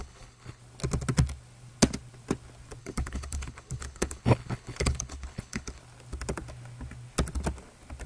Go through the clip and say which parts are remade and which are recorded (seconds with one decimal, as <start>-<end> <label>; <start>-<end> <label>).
0.0-0.6 remade; 0.6-2.8 recorded; 2.8-5.8 remade; 5.8-8.1 recorded